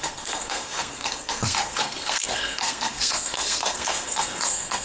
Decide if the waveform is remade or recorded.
remade